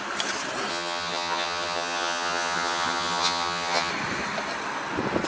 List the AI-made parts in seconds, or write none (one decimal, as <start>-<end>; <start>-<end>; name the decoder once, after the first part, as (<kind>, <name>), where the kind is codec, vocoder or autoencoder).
0.7-3.9 (vocoder, HiFi-GAN)